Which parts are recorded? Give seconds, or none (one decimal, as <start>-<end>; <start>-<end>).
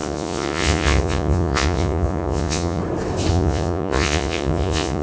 2.8-3.3